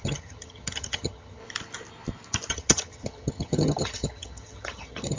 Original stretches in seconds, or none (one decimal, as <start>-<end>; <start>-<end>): 1.4-2.5